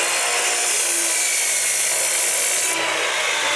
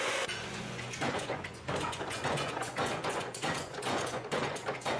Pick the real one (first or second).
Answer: first